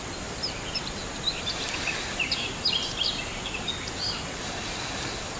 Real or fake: real